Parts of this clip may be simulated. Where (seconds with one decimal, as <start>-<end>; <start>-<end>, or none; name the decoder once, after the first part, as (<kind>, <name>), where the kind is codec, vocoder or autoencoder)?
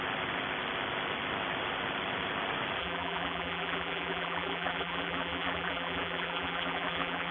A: 2.8-7.3 (vocoder, BigVGAN v2)